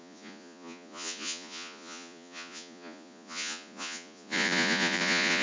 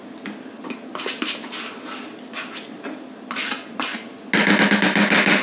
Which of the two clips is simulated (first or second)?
first